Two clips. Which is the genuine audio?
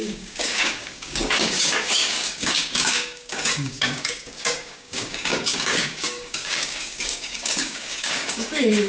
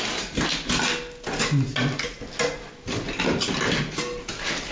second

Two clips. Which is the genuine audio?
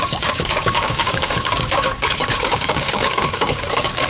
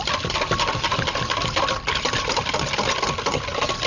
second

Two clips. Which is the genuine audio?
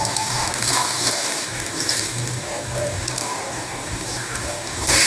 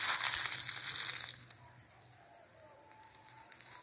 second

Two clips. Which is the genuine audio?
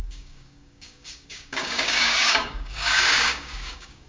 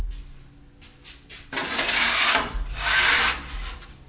second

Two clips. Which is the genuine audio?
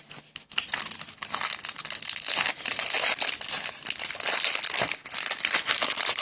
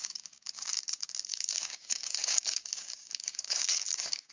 first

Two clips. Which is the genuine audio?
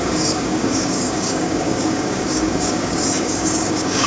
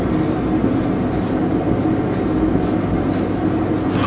second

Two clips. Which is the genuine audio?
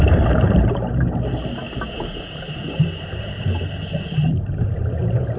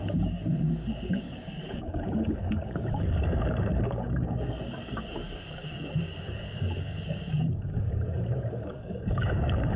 first